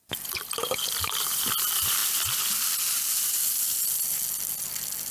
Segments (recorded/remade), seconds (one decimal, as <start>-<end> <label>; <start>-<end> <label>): 0.0-2.0 remade; 2.0-5.1 recorded